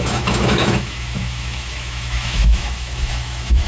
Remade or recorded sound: remade